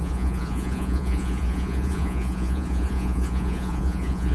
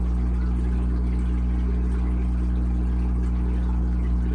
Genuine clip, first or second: second